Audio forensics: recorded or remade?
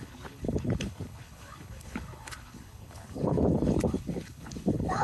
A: remade